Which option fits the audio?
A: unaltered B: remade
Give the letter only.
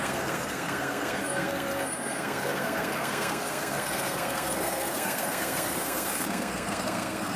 B